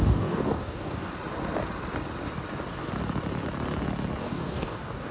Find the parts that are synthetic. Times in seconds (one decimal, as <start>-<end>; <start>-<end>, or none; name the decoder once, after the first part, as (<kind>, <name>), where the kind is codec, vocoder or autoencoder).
0.0-1.1 (codec, DAC); 4.2-5.1